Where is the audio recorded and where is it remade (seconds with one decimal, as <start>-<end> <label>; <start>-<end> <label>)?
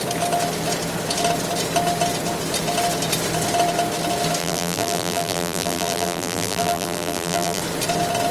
0.0-4.4 recorded; 4.4-7.6 remade; 7.6-8.3 recorded